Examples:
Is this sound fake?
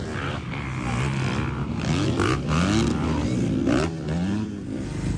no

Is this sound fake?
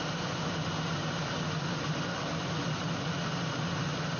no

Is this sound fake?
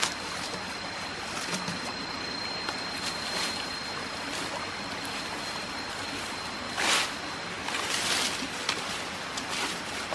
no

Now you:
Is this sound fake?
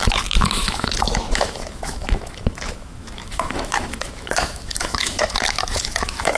yes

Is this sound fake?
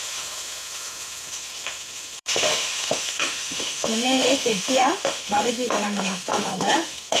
yes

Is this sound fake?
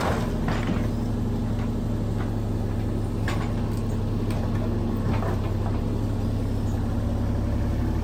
no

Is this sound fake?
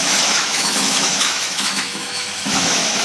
yes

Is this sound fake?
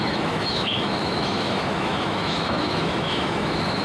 yes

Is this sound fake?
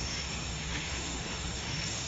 yes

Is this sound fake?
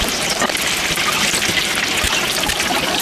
no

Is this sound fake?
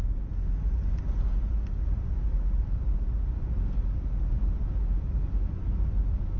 no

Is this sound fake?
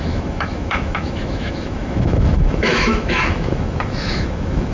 yes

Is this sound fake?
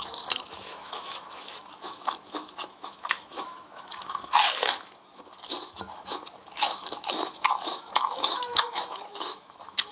yes